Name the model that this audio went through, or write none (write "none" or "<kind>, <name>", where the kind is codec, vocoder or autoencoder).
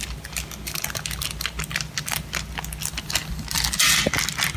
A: none